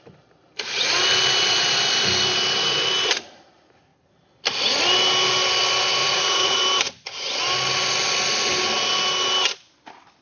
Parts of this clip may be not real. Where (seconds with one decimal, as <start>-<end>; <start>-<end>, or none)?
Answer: 6.0-6.6